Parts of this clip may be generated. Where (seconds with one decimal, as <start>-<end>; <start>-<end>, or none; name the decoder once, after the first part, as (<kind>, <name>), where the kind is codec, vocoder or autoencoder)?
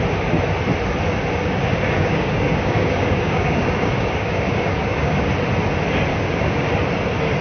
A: 1.4-5.3 (codec, DAC); 6.1-6.7